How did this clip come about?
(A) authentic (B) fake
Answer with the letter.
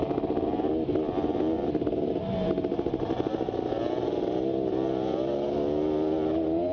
A